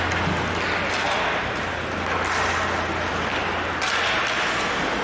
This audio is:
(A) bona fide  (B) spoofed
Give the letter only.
A